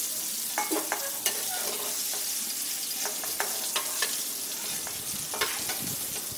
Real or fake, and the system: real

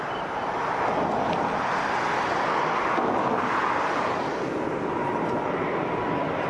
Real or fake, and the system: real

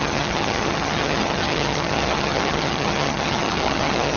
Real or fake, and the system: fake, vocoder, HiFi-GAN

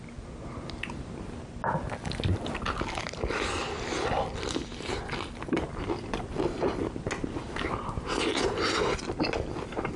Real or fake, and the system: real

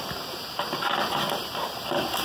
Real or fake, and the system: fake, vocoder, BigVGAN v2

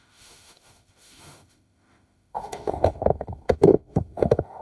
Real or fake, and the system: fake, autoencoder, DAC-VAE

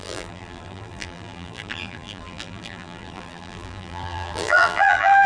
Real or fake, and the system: fake, vocoder, BigVGAN v2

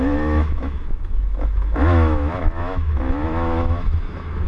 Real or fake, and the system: fake, autoencoder, DAC-VAE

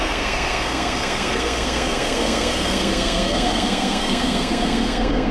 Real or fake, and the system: fake, codec, SNAC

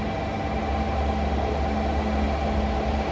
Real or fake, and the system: real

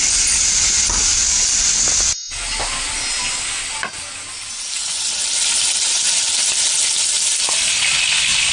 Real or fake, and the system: real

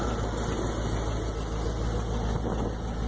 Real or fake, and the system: real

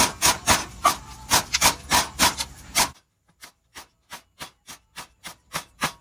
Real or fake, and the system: real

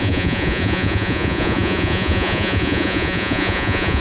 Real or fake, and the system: fake, vocoder, Vocos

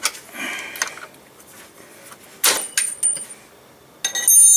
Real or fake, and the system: real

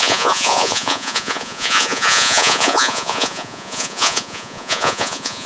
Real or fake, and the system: fake, vocoder, Vocos